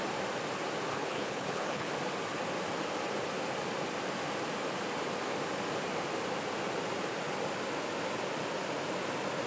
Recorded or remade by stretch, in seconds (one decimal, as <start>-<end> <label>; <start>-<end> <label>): 0.0-0.9 recorded; 0.9-1.9 remade; 1.9-9.5 recorded